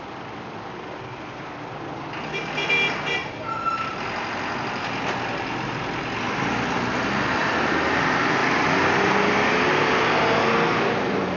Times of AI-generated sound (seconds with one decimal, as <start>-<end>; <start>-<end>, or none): none